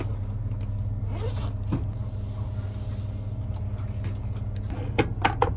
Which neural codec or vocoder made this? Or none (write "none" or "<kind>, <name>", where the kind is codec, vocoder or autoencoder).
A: none